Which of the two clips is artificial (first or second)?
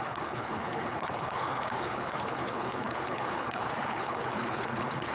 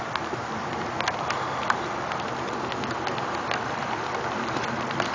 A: first